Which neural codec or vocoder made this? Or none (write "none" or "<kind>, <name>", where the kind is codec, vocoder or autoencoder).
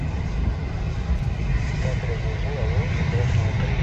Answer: none